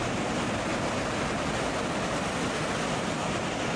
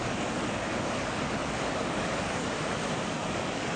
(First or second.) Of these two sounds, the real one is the first